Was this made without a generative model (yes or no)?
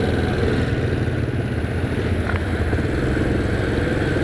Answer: yes